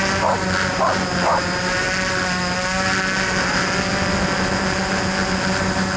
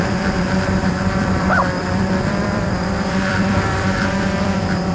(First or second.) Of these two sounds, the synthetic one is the second